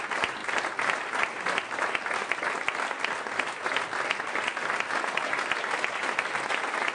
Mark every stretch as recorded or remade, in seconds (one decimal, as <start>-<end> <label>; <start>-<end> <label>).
0.0-6.9 recorded